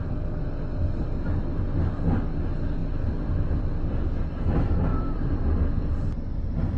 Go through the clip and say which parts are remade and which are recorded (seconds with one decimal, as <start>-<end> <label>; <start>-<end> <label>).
0.0-2.8 recorded; 2.8-4.1 remade; 4.1-4.9 recorded; 4.9-6.8 remade